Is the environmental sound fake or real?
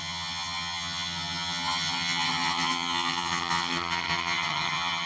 fake